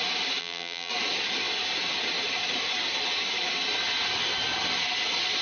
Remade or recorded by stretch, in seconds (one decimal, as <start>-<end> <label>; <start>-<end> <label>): 0.0-0.4 recorded; 0.4-0.9 remade; 0.9-5.4 recorded